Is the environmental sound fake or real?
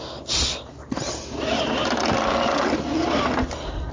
real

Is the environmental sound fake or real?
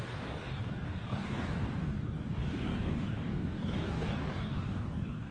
fake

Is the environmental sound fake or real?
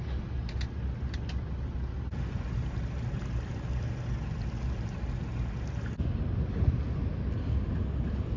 real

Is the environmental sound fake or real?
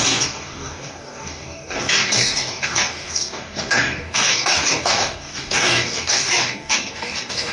fake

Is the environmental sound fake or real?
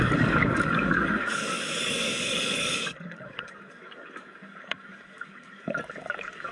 fake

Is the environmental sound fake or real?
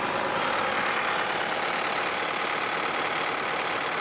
real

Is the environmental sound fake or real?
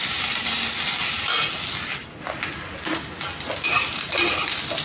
real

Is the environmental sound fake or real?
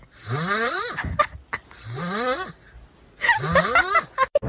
real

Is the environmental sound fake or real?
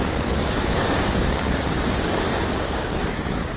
fake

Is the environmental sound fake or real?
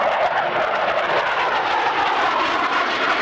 real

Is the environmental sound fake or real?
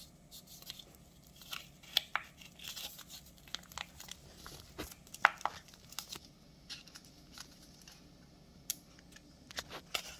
real